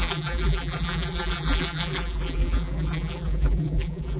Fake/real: fake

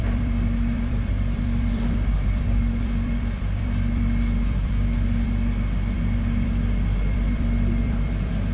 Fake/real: fake